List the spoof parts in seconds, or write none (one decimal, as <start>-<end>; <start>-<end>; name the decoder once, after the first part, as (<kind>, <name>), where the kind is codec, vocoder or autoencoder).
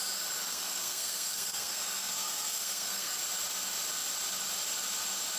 0.5-3.2 (codec, SNAC)